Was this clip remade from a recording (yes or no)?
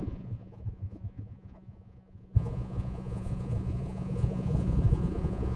yes